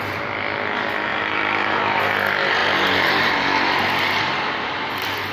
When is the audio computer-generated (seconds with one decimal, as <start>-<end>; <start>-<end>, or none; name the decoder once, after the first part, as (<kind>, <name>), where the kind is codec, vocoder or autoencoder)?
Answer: 1.1-2.1 (vocoder, BigVGAN v2); 2.6-3.3